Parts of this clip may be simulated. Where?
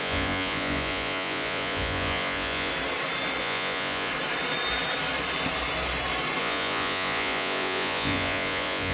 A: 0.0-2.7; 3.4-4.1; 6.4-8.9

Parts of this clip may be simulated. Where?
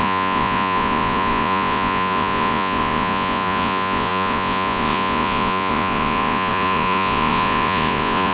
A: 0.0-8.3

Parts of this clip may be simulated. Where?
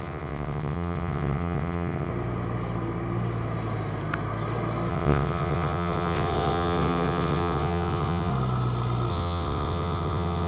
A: 0.0-2.1; 4.9-8.3; 9.1-10.5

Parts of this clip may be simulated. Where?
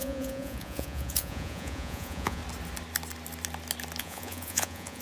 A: 0.0-2.4; 4.0-5.0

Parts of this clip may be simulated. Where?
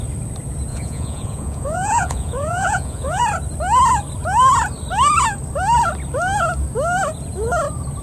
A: 0.7-3.2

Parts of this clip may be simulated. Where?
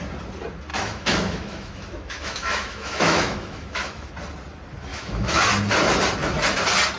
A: 0.7-4.1; 4.9-5.4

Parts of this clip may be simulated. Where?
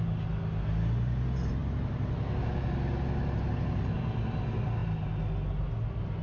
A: none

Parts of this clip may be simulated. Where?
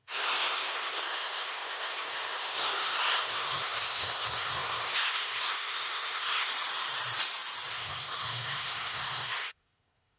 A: 0.0-6.5; 7.7-10.2